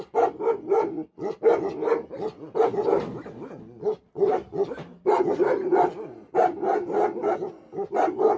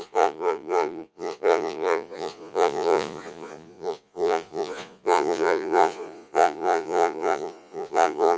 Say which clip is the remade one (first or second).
second